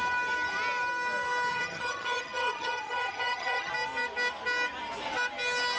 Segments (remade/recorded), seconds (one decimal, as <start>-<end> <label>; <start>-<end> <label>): 0.0-1.5 recorded; 1.5-3.7 remade; 3.7-5.8 recorded